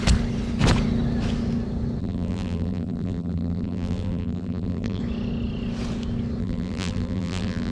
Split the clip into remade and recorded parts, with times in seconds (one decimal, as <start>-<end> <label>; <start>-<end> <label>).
0.0-2.0 recorded; 2.0-5.0 remade; 5.0-6.4 recorded; 6.4-7.7 remade